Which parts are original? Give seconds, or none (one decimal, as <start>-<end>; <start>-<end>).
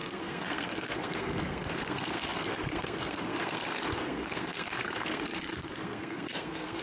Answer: none